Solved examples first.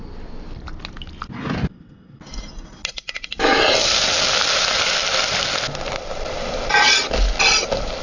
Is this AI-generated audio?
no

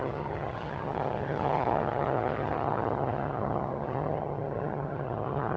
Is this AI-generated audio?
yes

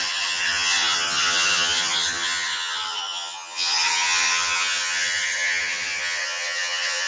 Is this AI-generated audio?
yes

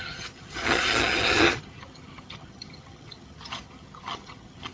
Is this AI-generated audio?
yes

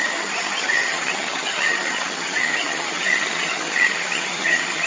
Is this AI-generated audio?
yes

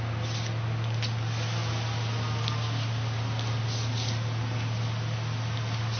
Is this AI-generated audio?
no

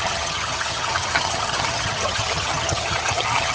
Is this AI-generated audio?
yes